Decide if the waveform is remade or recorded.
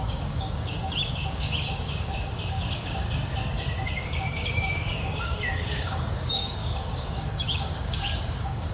remade